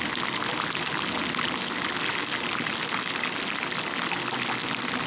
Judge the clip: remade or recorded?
recorded